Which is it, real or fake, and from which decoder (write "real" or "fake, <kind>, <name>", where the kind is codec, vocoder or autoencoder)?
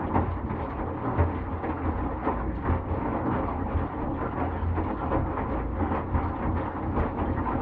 real